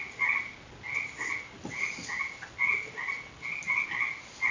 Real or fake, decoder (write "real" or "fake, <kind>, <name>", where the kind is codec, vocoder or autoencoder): real